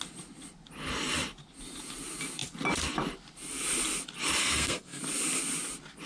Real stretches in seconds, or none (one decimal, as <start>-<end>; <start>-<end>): 0.0-4.4; 5.0-6.1